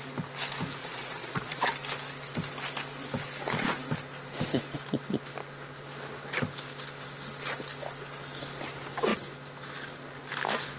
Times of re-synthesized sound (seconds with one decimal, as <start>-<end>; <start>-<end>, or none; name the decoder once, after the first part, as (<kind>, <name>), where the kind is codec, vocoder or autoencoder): 0.8-1.6 (vocoder, Vocos)